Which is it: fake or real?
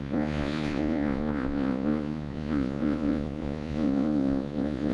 fake